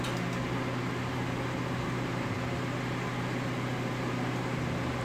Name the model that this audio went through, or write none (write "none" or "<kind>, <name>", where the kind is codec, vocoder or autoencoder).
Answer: none